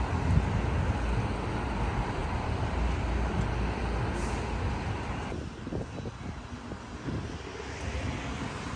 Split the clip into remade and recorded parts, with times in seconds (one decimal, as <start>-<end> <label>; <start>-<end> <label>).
0.0-8.8 recorded